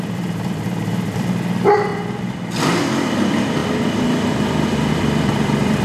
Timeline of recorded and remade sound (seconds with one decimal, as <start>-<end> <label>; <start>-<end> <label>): 0.0-1.9 remade; 1.9-2.8 recorded; 2.8-5.8 remade